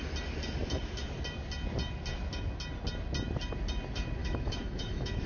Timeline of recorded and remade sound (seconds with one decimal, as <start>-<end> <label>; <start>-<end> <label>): 0.0-4.2 recorded; 4.2-5.3 remade